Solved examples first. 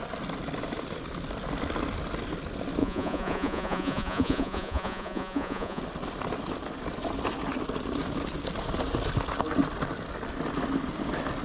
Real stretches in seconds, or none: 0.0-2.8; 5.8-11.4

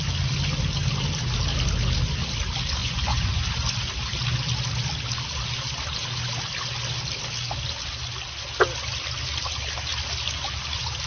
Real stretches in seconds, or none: 0.0-2.8; 3.4-11.1

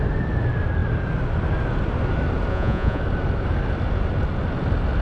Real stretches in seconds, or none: 0.0-2.5; 3.0-5.0